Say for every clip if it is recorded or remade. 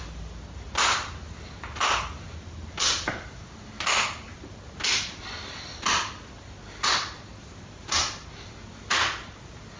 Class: recorded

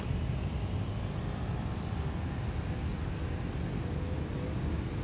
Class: recorded